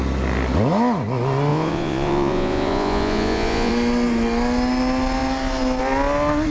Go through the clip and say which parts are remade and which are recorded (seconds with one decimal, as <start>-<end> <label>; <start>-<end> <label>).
0.0-1.5 recorded; 1.5-3.7 remade; 3.7-6.5 recorded